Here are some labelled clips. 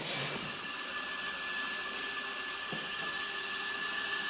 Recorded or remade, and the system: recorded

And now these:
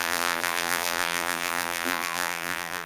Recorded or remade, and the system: remade, vocoder, BigVGAN v2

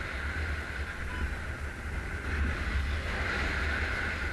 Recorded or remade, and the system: recorded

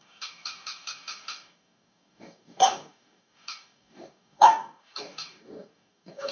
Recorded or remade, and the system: remade, codec, DAC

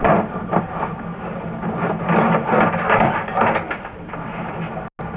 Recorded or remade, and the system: recorded